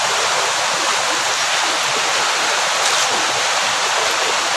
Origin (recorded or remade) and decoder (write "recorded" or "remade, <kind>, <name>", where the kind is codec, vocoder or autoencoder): recorded